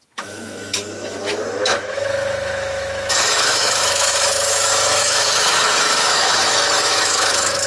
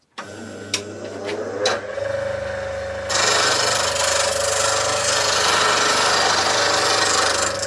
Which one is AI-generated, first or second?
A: first